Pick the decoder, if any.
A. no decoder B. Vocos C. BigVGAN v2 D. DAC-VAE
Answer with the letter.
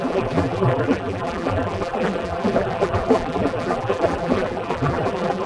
C